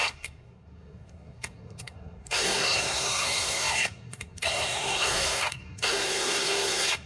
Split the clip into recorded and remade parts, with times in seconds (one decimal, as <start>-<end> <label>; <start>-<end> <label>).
0.0-7.1 remade